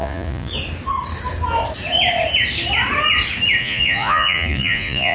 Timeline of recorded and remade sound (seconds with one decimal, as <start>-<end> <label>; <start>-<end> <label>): 0.0-0.5 remade; 0.5-3.6 recorded; 3.6-5.1 remade